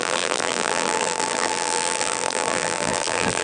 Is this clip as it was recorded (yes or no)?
no